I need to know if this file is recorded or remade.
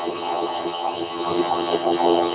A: remade